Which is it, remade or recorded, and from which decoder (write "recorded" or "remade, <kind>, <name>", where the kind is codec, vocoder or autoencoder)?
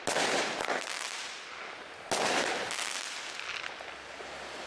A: recorded